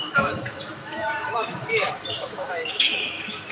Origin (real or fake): fake